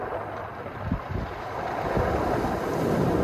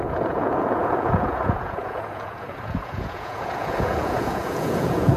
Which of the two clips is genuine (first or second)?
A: first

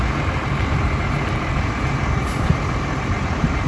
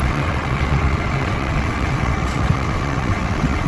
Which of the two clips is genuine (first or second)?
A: first